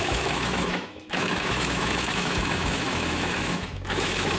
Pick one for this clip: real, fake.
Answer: fake